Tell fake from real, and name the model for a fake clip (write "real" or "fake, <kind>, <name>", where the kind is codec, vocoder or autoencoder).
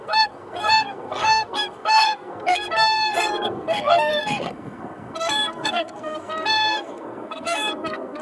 fake, codec, SNAC